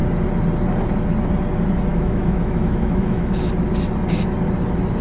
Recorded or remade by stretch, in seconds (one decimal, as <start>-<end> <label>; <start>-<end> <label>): 0.0-1.9 recorded; 1.9-3.5 remade; 3.5-5.0 recorded